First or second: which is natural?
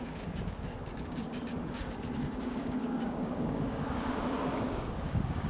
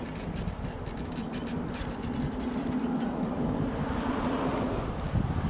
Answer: second